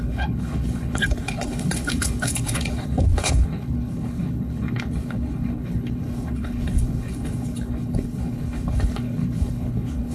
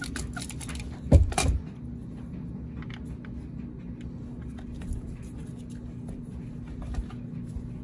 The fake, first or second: first